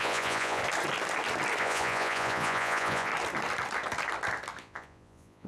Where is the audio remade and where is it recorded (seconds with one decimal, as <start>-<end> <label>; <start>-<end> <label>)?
0.0-0.6 remade; 0.6-1.6 recorded; 1.6-3.1 remade; 3.1-4.6 recorded; 4.6-5.5 remade